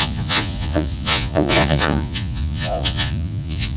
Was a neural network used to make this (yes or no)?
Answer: yes